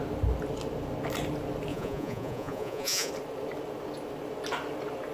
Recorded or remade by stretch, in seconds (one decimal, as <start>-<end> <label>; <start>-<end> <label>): 0.0-1.7 recorded; 1.7-3.1 remade; 3.1-5.1 recorded